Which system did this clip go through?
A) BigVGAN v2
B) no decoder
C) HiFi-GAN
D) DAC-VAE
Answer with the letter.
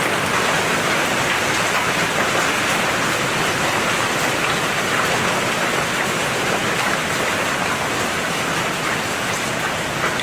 B